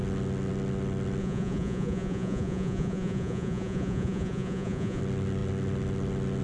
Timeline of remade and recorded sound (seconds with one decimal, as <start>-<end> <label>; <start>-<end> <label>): 0.0-1.2 recorded; 1.2-5.0 remade; 5.0-6.4 recorded